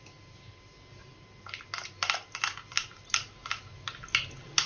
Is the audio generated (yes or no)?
no